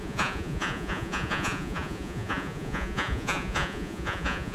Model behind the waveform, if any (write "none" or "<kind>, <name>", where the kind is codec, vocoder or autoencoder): vocoder, Vocos